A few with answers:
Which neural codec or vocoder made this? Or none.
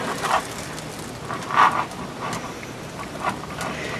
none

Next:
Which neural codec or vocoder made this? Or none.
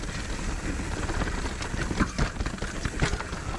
none